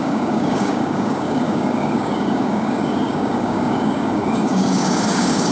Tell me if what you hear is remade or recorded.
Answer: remade